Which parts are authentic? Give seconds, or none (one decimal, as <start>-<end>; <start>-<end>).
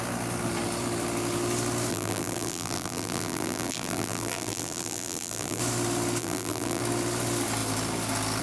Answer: 0.0-1.9; 5.6-6.2; 6.8-8.4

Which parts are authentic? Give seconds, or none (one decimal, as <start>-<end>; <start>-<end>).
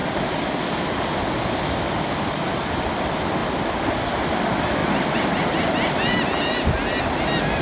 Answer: 0.0-7.6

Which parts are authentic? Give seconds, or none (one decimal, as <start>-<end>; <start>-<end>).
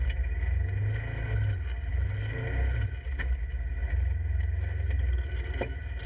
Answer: 0.0-6.1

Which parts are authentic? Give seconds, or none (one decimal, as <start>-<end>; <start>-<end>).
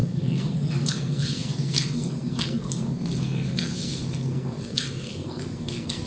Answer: none